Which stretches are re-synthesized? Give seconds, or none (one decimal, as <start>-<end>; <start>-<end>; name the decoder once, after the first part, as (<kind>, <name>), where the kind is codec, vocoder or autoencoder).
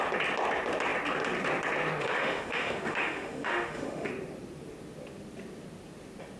2.0-4.1 (autoencoder, DAC-VAE)